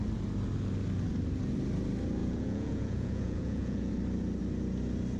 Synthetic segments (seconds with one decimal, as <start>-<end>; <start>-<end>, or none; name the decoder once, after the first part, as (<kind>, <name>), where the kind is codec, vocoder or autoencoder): 2.2-3.9 (vocoder, Vocos)